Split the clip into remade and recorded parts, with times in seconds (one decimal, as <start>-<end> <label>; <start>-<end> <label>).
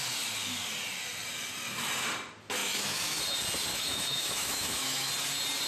0.0-2.6 recorded; 2.6-3.2 remade; 3.2-3.7 recorded; 3.7-5.1 remade; 5.1-5.7 recorded